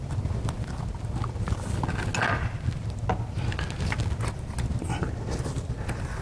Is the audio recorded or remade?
recorded